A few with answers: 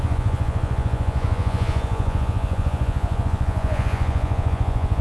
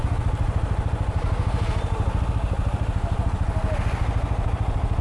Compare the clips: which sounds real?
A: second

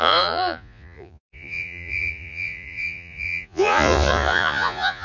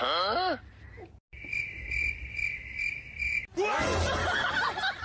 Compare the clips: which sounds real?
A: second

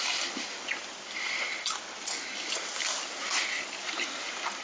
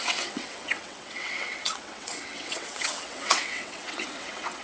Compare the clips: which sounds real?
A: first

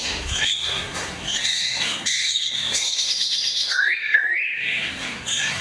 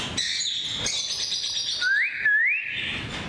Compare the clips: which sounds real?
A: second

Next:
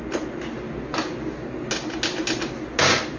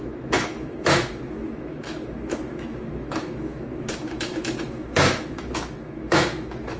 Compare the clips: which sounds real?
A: first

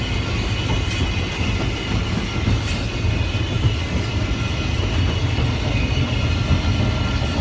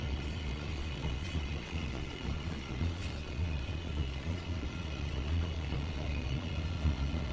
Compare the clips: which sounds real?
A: first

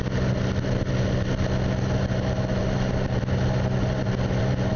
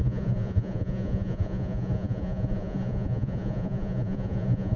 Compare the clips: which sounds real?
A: first